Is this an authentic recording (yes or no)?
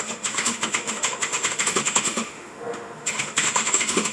no